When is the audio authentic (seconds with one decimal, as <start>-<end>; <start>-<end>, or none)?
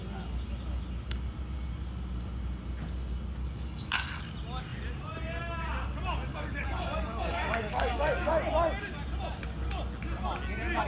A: 0.0-3.4; 4.2-6.3; 8.3-10.9